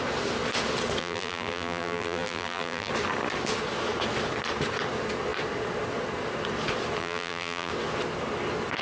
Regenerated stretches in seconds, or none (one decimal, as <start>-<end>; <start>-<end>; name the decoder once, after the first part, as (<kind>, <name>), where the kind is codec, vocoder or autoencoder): 1.0-2.9 (vocoder, BigVGAN v2); 7.0-7.7